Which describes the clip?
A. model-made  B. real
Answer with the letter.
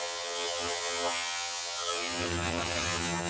A